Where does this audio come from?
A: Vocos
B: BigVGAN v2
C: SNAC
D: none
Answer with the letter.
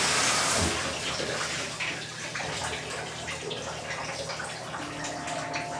D